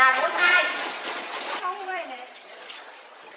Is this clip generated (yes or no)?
yes